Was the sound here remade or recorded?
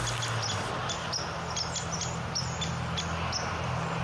recorded